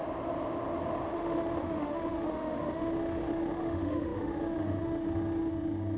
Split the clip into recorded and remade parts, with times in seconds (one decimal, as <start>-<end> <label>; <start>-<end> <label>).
0.0-1.1 recorded; 1.1-6.0 remade